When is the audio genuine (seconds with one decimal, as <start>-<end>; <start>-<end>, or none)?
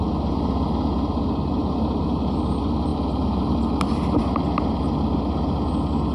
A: 0.0-6.1